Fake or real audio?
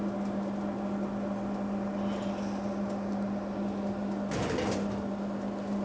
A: real